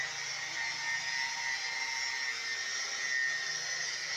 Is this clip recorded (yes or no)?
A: yes